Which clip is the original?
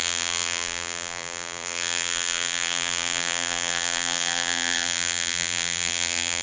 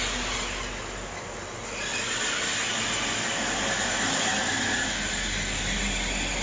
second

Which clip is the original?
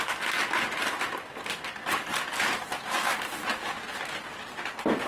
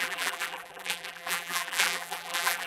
first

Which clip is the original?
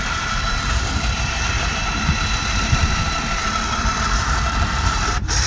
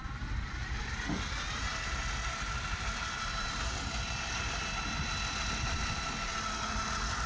second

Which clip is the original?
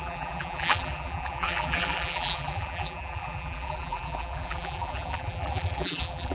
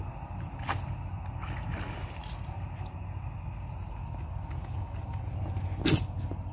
second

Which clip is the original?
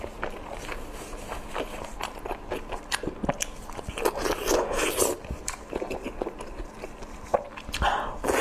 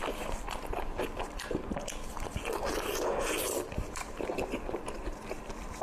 first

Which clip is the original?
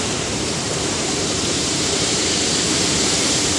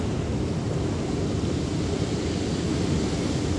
second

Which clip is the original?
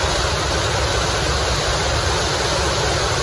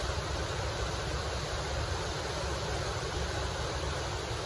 first